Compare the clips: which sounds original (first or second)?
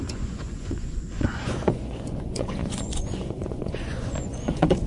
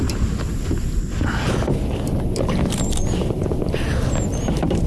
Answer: second